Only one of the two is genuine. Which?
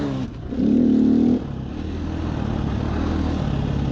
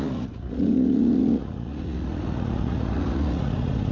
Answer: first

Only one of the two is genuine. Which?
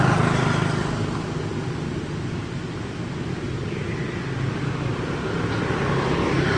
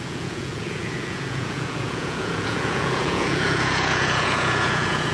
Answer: first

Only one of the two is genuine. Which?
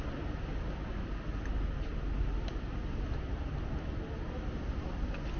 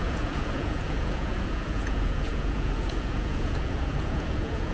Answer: first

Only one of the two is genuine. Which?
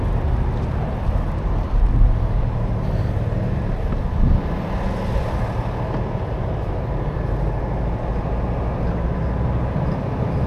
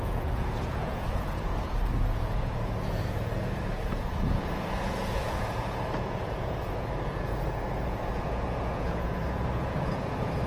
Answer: first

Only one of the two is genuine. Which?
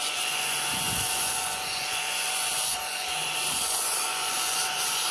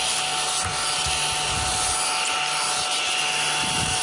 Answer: second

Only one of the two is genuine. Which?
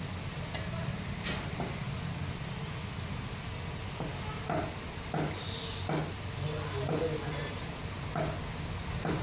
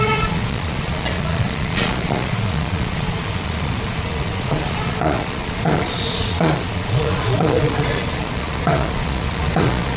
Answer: first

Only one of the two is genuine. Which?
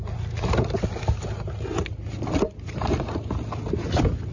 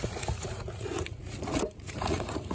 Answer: first